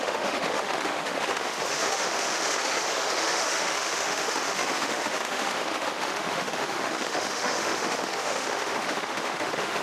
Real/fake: fake